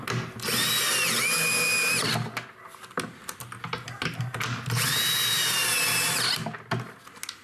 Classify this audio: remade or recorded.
recorded